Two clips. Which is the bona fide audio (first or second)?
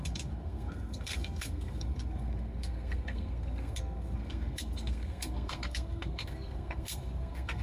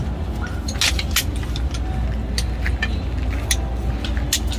second